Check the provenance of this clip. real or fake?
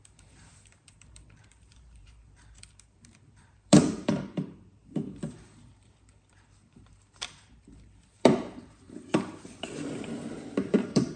fake